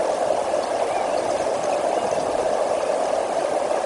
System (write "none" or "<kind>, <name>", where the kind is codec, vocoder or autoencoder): none